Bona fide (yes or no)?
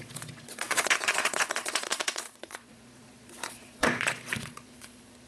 no